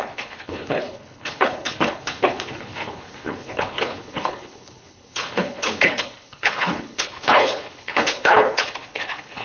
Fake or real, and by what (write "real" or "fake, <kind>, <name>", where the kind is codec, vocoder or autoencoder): fake, codec, HILCodec